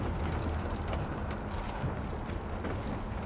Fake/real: fake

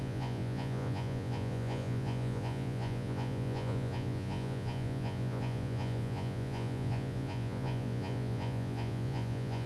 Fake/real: fake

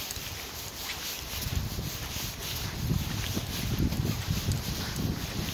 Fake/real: real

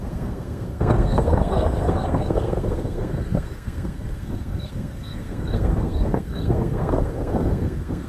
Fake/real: fake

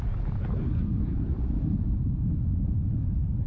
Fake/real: real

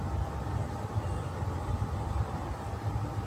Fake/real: real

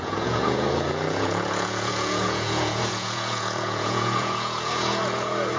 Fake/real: fake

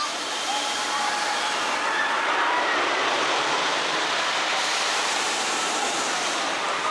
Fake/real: fake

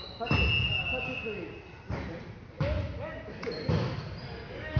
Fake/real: real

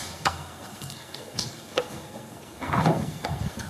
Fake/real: fake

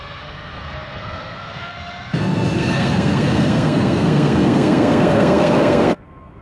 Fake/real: fake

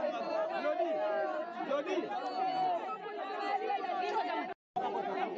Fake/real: real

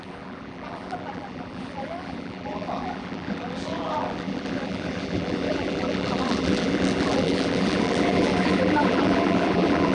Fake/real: fake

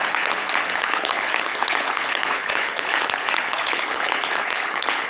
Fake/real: fake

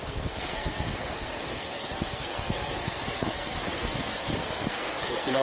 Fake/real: fake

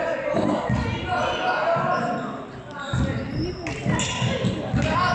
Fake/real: real